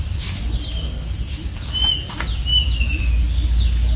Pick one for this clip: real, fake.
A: real